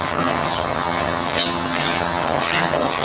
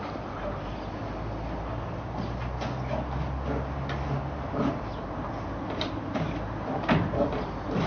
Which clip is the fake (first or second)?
first